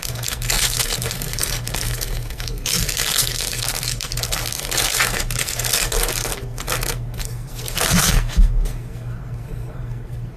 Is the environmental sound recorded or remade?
remade